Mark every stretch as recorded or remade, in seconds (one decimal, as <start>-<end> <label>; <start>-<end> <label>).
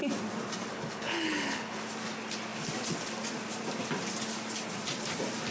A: 0.0-0.7 recorded; 0.7-1.8 remade; 1.8-5.5 recorded